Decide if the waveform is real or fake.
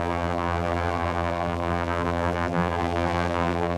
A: fake